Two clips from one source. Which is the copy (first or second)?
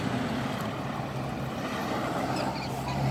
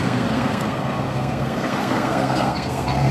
second